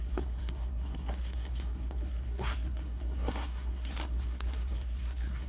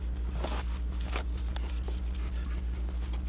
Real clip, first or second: second